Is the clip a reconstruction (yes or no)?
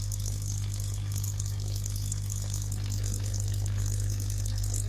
yes